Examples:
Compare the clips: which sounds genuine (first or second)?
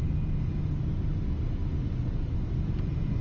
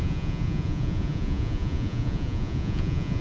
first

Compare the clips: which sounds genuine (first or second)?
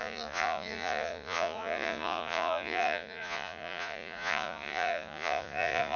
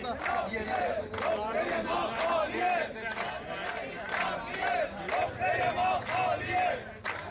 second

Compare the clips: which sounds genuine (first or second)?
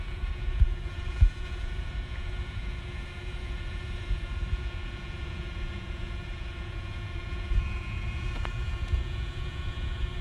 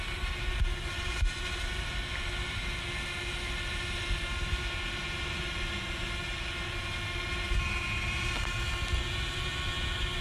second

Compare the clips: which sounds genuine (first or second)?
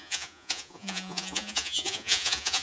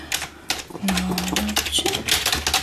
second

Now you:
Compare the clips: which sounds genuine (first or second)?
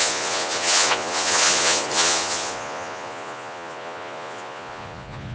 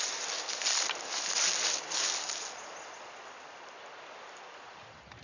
second